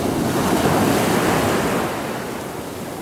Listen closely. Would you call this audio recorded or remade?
recorded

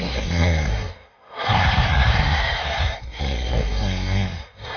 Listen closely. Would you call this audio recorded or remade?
remade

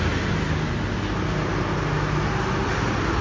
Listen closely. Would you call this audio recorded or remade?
recorded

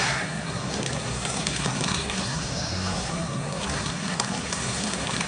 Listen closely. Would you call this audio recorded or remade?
remade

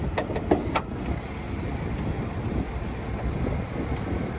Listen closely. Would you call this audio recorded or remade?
recorded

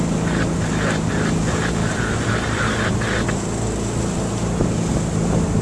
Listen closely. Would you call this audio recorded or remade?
recorded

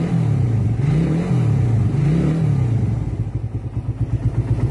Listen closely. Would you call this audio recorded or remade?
recorded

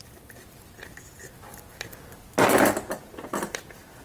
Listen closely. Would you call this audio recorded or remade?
recorded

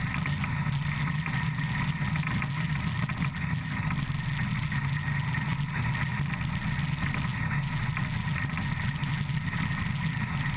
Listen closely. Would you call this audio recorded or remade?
recorded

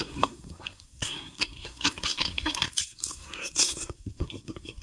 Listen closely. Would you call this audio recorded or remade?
remade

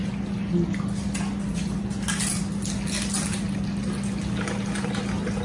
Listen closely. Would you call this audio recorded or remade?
recorded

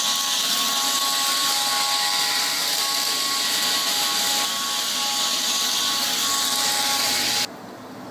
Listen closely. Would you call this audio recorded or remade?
recorded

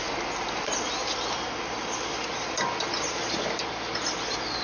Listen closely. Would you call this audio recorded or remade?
recorded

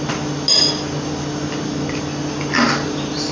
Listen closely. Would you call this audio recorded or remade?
recorded